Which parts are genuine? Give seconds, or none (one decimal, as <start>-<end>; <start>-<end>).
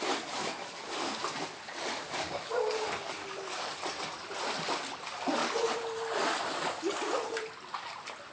0.0-0.4; 1.2-2.0; 3.8-8.3